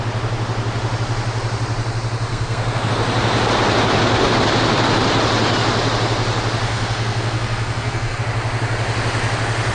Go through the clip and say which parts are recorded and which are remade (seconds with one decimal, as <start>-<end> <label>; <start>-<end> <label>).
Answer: 0.0-2.3 recorded; 2.3-2.9 remade; 2.9-6.7 recorded; 6.7-8.2 remade; 8.2-9.7 recorded